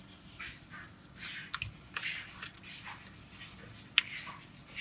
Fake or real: real